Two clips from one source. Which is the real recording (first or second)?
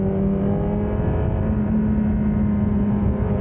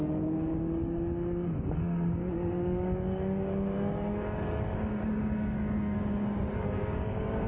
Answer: first